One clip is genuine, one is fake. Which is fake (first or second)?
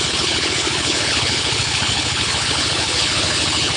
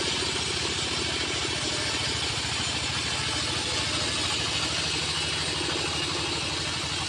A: first